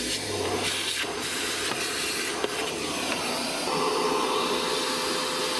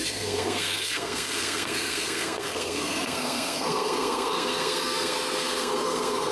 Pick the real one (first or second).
first